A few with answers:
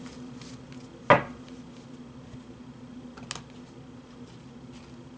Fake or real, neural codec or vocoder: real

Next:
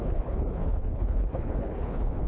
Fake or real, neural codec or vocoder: fake, codec, HILCodec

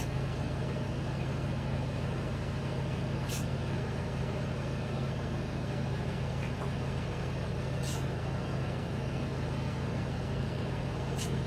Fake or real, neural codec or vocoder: fake, codec, SNAC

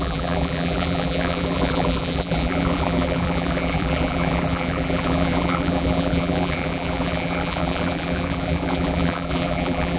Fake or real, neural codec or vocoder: fake, vocoder, BigVGAN v2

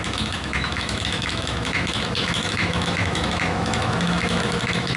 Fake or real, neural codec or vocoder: fake, autoencoder, DAC-VAE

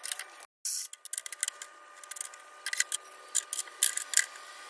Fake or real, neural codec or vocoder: real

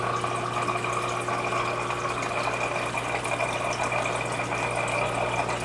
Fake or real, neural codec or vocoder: real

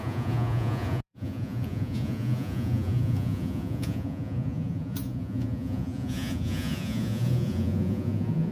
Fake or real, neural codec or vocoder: fake, vocoder, Vocos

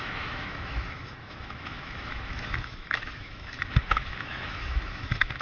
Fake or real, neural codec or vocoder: fake, autoencoder, DAC-VAE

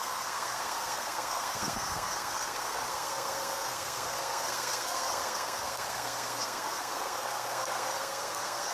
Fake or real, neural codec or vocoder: fake, codec, SNAC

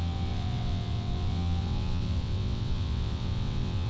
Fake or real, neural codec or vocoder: fake, vocoder, WaveNeXt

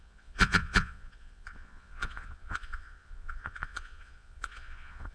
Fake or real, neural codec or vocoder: fake, vocoder, Vocos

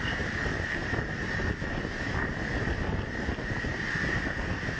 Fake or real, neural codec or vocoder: real